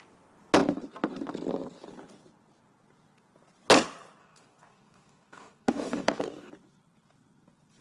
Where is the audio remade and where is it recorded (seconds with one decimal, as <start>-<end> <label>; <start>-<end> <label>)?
0.0-4.2 recorded; 4.2-6.5 remade; 6.5-7.8 recorded